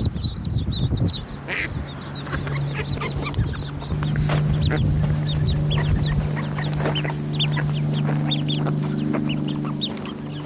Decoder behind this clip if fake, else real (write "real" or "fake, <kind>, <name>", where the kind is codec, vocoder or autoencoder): real